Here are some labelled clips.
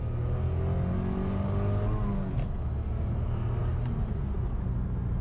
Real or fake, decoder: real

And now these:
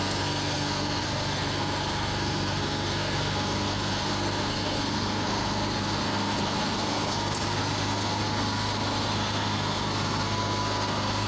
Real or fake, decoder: fake, codec, SNAC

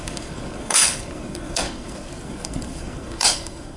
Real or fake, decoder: fake, codec, SNAC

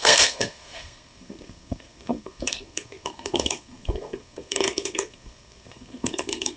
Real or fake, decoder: fake, codec, SNAC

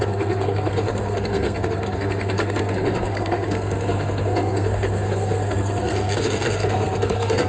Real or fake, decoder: fake, codec, SNAC